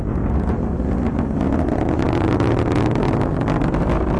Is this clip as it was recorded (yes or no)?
yes